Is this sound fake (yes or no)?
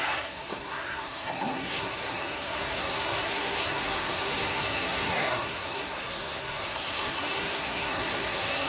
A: yes